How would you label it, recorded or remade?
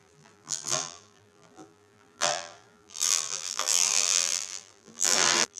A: remade